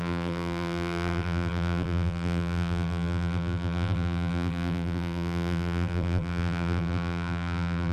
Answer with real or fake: fake